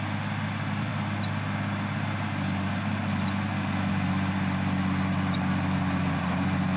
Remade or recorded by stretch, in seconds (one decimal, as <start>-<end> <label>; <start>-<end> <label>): 0.0-6.8 recorded

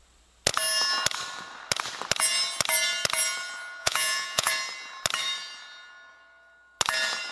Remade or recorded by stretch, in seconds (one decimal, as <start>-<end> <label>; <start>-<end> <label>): 0.0-3.8 recorded; 3.8-4.5 remade; 4.5-7.3 recorded

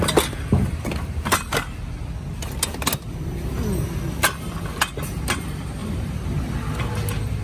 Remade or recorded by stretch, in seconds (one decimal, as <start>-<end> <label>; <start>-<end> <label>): 0.0-5.8 recorded; 5.8-6.7 remade; 6.7-7.4 recorded

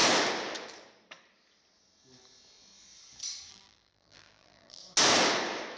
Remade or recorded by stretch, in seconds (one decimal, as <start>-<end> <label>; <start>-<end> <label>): 0.0-3.5 recorded; 3.5-4.8 remade; 4.8-5.8 recorded

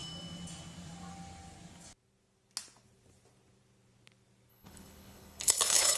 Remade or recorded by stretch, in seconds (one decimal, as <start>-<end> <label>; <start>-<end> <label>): 0.0-4.5 recorded; 4.5-6.0 remade

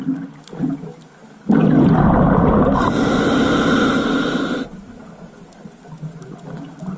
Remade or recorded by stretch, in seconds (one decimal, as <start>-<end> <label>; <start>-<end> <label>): 0.0-7.0 recorded

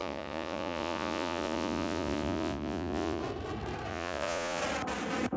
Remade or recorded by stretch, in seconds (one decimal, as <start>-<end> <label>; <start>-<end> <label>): 0.0-3.2 remade; 3.2-3.9 recorded; 3.9-4.6 remade; 4.6-5.4 recorded

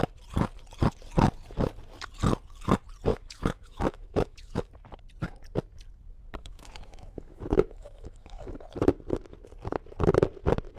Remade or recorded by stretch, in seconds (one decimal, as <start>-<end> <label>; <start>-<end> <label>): 0.0-3.1 recorded; 3.1-4.7 remade; 4.7-6.4 recorded; 6.4-8.6 remade; 8.6-10.8 recorded